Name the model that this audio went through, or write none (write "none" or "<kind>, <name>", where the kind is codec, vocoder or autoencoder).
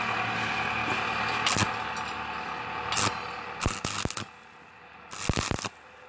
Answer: none